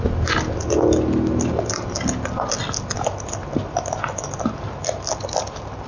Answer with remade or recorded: recorded